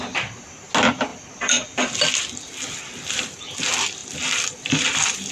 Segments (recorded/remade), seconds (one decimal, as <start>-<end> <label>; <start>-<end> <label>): 0.0-1.1 recorded; 1.1-2.5 remade; 2.5-4.0 recorded; 4.0-5.3 remade